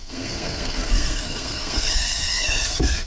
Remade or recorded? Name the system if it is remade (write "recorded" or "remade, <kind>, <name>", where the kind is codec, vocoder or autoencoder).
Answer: remade, codec, SNAC